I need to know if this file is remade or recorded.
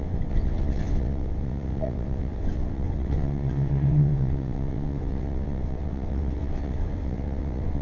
remade